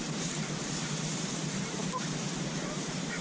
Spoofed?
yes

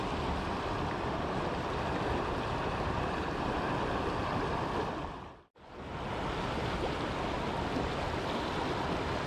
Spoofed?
no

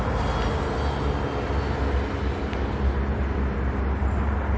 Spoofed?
no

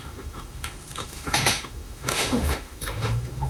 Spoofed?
yes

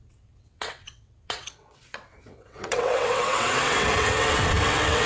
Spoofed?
yes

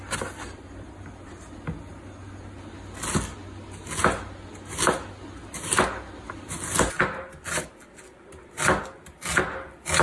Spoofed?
no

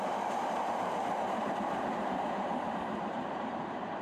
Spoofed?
yes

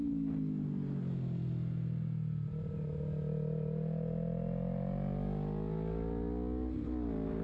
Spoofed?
no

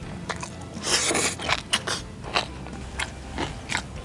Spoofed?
no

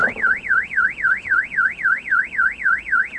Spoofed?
no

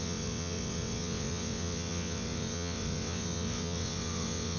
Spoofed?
yes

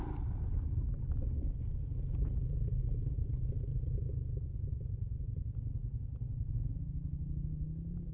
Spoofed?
no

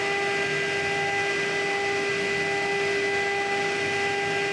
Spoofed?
no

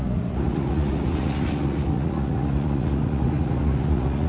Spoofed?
yes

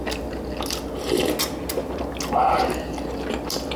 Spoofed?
no